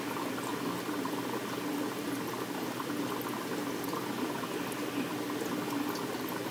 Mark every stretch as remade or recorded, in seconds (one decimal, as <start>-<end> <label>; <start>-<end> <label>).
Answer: 0.0-6.5 recorded

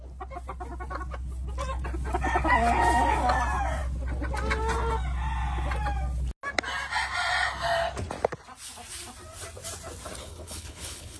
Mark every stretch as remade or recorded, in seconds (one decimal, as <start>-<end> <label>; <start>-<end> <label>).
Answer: 0.0-10.2 recorded; 10.2-11.2 remade

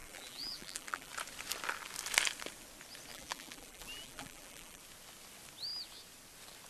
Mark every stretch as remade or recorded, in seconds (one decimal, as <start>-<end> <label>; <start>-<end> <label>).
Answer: 0.0-1.1 remade; 1.1-3.1 recorded; 3.1-4.8 remade; 4.8-6.7 recorded

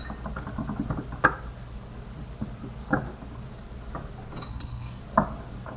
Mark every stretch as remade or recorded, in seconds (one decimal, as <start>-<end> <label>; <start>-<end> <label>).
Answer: 0.0-4.5 recorded; 4.5-5.0 remade; 5.0-5.8 recorded

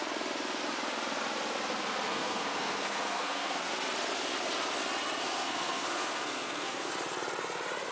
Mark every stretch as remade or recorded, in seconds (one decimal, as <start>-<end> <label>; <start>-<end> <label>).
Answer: 0.0-2.1 recorded; 2.1-3.7 remade; 3.7-5.2 recorded; 5.2-6.9 remade; 6.9-7.9 recorded

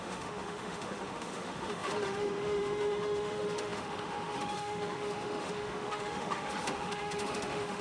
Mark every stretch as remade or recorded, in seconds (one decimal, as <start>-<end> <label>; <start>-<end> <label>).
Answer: 0.0-7.8 remade

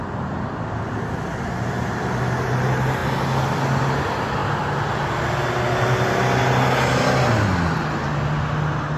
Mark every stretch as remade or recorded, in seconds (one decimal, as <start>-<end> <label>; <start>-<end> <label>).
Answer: 0.0-9.0 recorded